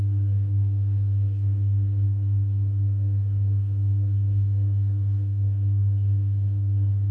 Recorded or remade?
remade